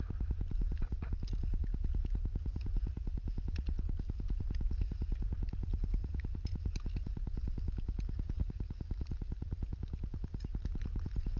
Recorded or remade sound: recorded